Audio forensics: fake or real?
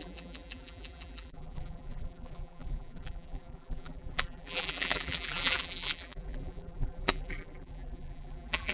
fake